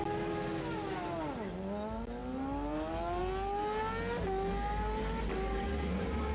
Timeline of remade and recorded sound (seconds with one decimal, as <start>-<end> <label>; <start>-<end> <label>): 0.0-6.3 recorded